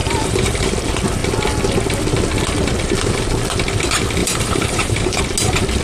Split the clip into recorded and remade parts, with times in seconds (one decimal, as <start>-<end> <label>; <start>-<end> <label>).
0.0-0.7 remade; 0.7-4.2 recorded; 4.2-5.2 remade; 5.2-5.8 recorded